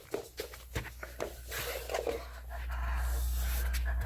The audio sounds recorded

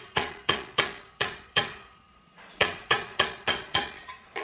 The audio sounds remade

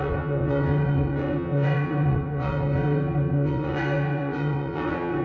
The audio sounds remade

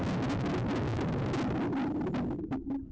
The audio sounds recorded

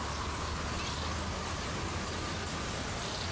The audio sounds recorded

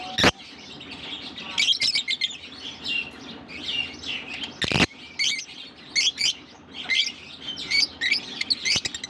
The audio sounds recorded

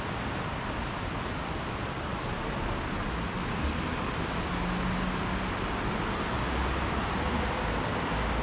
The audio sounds recorded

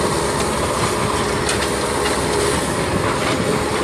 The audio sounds recorded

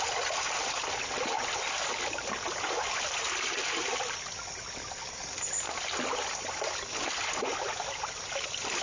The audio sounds recorded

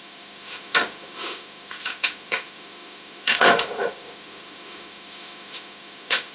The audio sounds remade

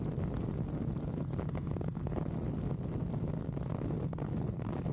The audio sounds recorded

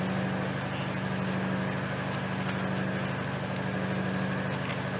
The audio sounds recorded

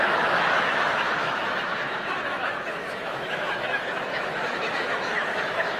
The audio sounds remade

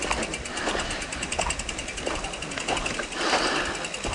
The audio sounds recorded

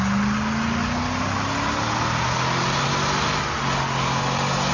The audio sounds recorded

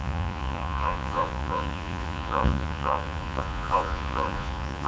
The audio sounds remade